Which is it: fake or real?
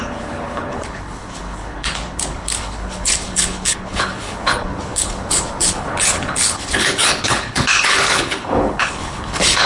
fake